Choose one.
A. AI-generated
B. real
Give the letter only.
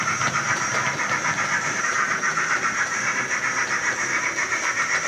A